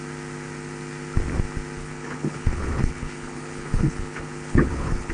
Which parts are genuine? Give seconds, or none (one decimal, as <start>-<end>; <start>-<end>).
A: 0.0-1.8